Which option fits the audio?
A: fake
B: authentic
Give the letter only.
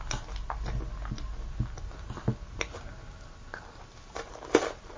B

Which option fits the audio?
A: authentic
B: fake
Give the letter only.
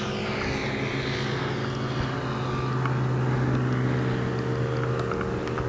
A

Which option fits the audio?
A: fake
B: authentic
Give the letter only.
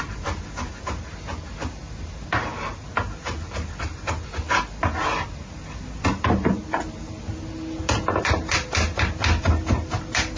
B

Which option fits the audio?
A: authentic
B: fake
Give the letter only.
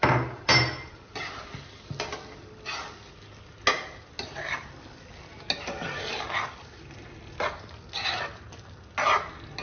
A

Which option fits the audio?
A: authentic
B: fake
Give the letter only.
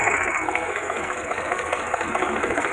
B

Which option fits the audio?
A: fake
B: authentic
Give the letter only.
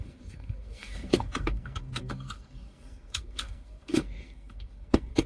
A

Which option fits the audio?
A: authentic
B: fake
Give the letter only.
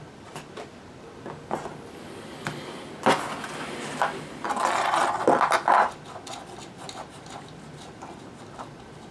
A